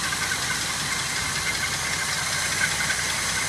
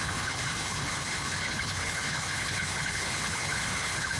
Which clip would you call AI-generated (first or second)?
second